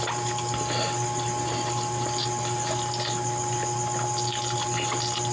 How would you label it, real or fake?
real